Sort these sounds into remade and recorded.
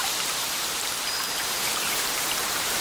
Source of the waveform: remade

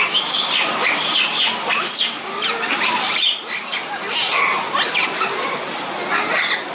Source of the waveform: recorded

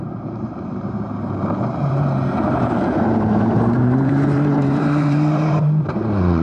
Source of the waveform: remade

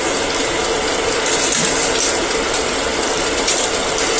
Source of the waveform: recorded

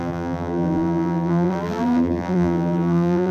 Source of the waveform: remade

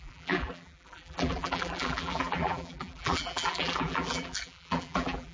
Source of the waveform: remade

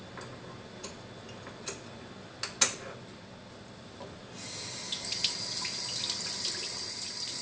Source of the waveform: recorded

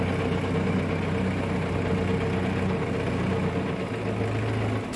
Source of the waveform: recorded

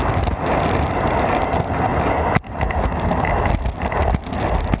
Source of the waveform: recorded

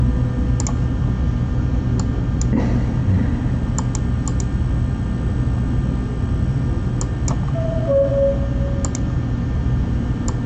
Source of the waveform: recorded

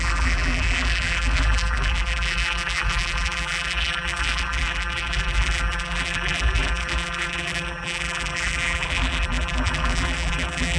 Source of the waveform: remade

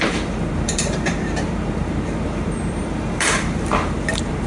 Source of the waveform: remade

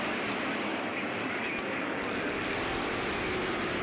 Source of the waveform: remade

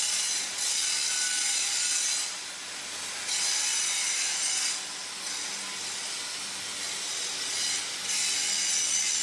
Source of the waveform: recorded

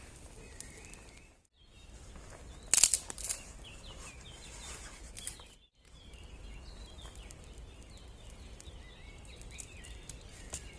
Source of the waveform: recorded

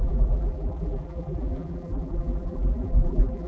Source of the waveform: remade